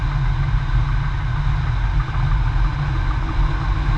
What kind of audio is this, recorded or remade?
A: recorded